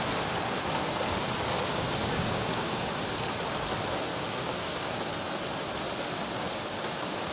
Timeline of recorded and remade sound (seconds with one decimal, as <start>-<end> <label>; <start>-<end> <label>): 0.0-2.0 recorded; 2.0-2.9 remade; 2.9-4.1 recorded; 4.1-5.0 remade; 5.0-7.3 recorded